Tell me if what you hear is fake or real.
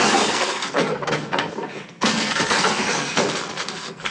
fake